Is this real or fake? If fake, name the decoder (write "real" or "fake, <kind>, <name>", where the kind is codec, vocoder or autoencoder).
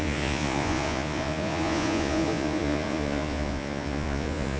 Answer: fake, vocoder, Vocos